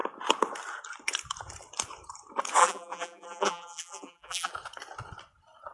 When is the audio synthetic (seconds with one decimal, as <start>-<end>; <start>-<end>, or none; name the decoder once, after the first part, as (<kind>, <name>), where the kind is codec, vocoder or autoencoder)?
2.6-4.5 (vocoder, BigVGAN v2)